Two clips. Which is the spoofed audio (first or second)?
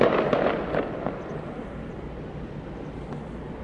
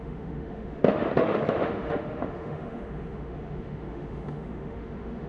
second